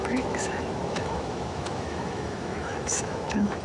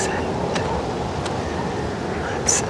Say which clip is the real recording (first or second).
second